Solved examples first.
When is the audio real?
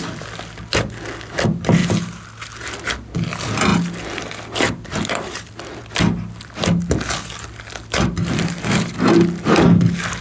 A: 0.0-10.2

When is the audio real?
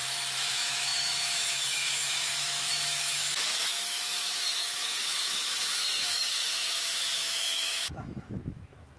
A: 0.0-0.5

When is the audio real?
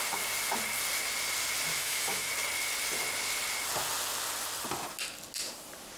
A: 0.0-1.7; 2.3-6.0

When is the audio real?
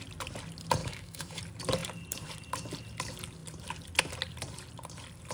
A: 0.0-0.8; 1.4-5.3